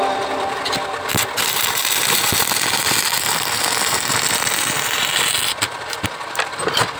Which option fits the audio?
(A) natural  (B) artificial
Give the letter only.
B